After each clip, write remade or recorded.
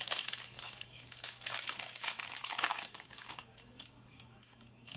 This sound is remade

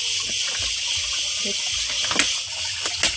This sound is recorded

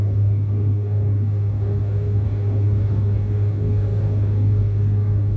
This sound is remade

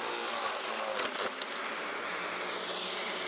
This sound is recorded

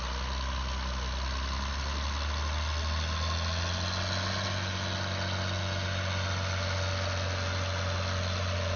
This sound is recorded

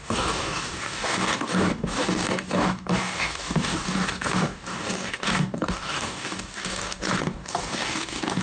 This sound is remade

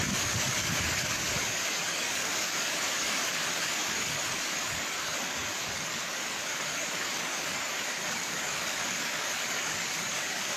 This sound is remade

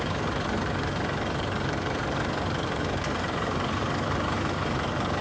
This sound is remade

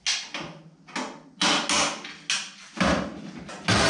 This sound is recorded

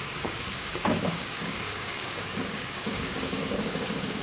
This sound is remade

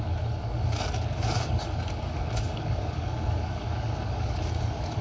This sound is remade